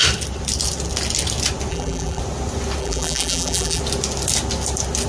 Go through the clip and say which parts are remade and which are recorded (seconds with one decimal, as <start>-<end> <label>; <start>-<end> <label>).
0.0-1.7 recorded; 1.7-2.2 remade; 2.2-2.8 recorded; 2.8-3.8 remade; 3.8-5.1 recorded